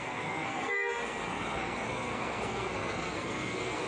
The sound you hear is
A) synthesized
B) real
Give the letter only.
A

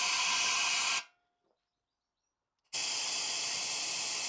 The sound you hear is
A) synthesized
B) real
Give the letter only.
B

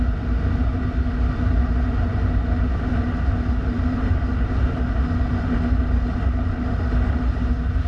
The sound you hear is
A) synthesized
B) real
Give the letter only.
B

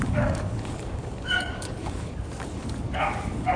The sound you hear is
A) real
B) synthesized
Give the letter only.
B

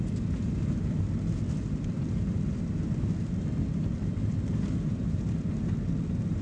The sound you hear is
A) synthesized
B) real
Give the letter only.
B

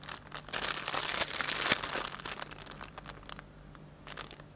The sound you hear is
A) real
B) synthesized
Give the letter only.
A